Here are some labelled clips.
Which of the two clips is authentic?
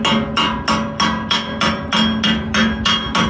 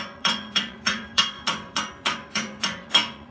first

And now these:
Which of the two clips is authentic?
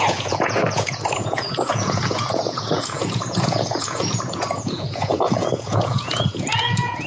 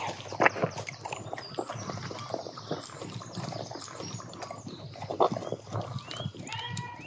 second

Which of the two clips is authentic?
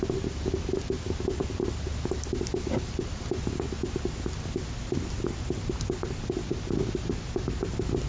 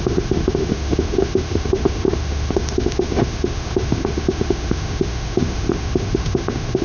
first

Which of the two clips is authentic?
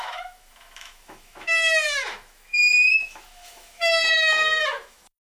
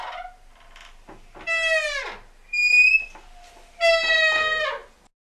second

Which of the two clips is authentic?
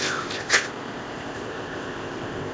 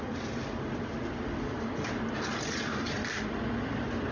second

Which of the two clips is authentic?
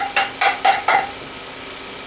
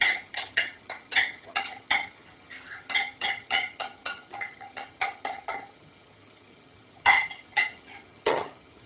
first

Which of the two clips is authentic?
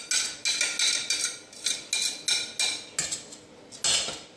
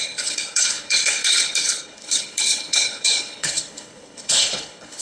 first